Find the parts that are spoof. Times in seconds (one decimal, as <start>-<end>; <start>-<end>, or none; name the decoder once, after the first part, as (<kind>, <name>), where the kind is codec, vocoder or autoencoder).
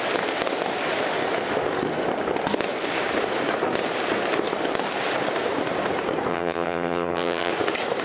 6.3-7.5 (vocoder, HiFi-GAN)